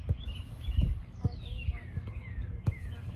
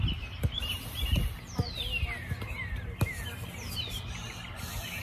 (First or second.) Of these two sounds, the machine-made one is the first